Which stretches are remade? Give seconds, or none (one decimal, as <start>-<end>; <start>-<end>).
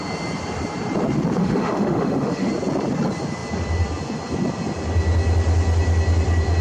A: 1.4-2.5